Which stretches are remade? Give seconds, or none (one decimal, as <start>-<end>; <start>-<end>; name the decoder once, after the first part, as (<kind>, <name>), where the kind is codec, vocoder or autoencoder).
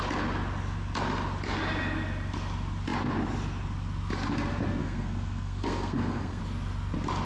4.8-6.4 (codec, SNAC)